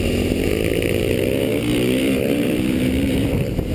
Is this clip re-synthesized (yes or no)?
yes